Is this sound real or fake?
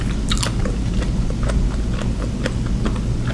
real